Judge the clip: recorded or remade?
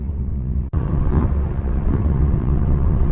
remade